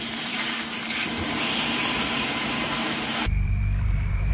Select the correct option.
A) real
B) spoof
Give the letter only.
B